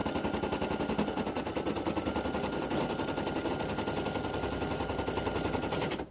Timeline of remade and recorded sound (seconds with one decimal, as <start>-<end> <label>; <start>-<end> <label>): 0.0-6.1 recorded